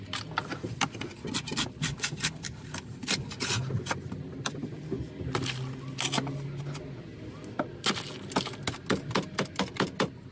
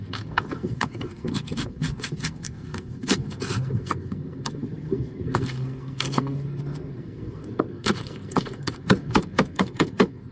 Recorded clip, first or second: first